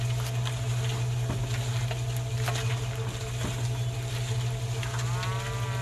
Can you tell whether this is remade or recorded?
recorded